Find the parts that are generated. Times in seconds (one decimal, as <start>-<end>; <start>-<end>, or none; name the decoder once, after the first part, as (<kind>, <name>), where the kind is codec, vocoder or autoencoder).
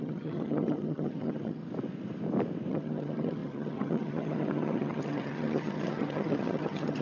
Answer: 0.0-1.6 (vocoder, HiFi-GAN); 2.7-7.0